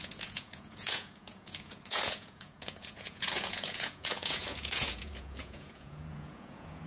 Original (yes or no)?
no